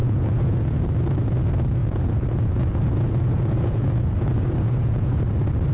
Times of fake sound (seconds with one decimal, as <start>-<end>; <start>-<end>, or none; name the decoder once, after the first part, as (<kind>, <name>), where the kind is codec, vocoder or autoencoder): 0.0-0.9 (vocoder, Vocos); 1.8-5.2